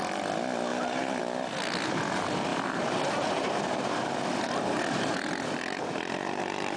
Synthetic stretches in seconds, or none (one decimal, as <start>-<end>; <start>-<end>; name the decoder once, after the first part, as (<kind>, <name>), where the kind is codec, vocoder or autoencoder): 0.7-1.2 (vocoder, BigVGAN v2); 2.5-6.8